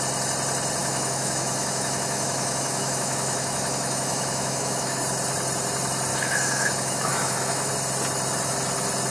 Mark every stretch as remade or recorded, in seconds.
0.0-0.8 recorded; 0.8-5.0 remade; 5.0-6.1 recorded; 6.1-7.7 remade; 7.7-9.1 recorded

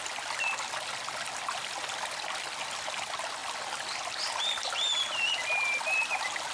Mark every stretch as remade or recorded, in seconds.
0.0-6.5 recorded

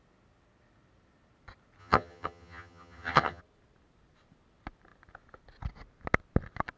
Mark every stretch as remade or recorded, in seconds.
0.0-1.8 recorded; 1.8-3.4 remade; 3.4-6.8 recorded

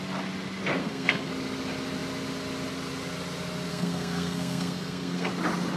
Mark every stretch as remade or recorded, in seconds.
0.0-0.8 recorded; 0.8-1.3 remade; 1.3-3.7 recorded; 3.7-5.3 remade; 5.3-5.8 recorded

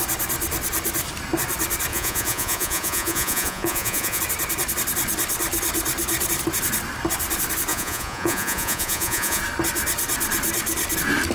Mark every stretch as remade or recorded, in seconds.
0.0-1.9 recorded; 1.9-4.2 remade; 4.2-7.7 recorded; 7.7-9.4 remade; 9.4-11.3 recorded